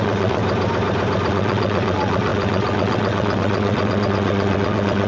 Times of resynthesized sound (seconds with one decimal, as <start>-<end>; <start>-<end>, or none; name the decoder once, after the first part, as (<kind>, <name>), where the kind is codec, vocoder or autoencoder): 0.0-0.4 (vocoder, WaveNeXt); 1.3-5.1

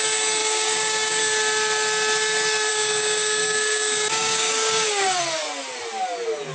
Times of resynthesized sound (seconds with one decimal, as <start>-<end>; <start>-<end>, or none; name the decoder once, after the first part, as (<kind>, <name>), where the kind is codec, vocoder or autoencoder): 0.4-1.2 (codec, DAC); 2.7-5.2

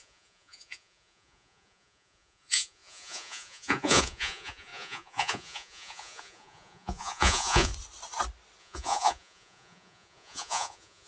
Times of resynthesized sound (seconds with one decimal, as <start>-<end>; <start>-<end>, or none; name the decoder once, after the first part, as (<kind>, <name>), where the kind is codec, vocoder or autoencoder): 0.0-7.7 (vocoder, Vocos); 8.6-11.1